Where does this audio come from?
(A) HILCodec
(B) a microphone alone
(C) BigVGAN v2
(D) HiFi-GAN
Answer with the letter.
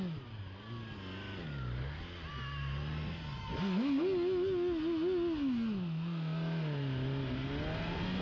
B